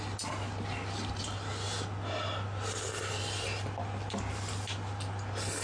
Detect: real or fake real